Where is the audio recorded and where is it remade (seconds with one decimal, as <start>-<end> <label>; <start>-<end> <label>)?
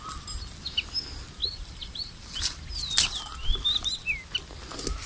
0.0-1.4 recorded; 1.4-2.6 remade; 2.6-5.1 recorded